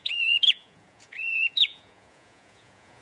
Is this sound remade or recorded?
remade